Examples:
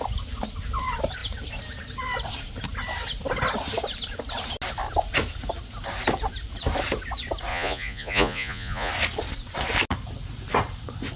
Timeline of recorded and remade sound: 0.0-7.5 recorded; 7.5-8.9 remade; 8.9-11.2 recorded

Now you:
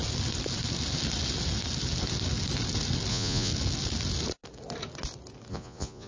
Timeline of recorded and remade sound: 0.0-3.1 recorded; 3.1-3.5 remade; 3.5-5.5 recorded; 5.5-6.1 remade

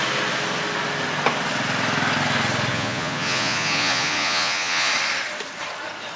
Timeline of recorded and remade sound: 0.0-2.7 recorded; 2.7-4.9 remade; 4.9-6.2 recorded

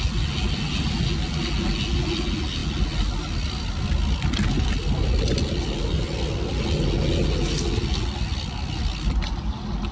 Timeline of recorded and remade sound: 0.0-9.9 recorded

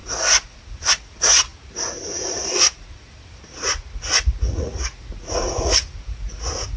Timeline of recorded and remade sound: 0.0-6.8 remade

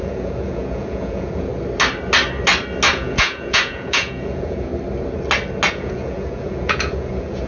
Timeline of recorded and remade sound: 0.0-1.5 remade; 1.5-2.9 recorded; 2.9-4.7 remade; 4.7-5.7 recorded; 5.7-7.5 remade

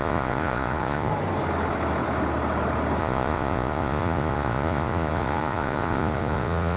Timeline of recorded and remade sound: 0.0-1.1 remade; 1.1-3.0 recorded; 3.0-6.8 remade

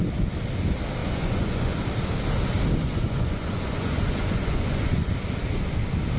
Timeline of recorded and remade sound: 0.0-1.0 recorded; 1.0-1.8 remade; 1.8-2.8 recorded; 2.8-5.1 remade; 5.1-6.2 recorded